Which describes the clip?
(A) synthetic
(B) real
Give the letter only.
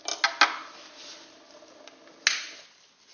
B